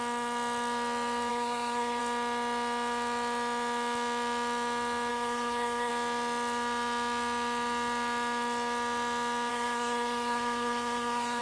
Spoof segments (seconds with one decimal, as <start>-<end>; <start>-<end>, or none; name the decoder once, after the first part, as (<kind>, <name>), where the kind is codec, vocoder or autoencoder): 1.3-2.0 (codec, SNAC); 5.1-5.9; 9.5-11.4